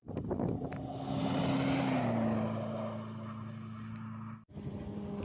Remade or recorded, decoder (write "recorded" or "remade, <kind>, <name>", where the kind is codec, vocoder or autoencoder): recorded